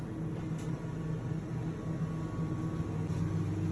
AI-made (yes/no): no